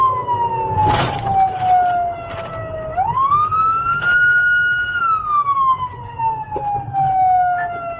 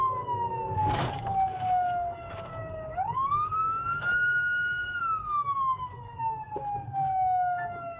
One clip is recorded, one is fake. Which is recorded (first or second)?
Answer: first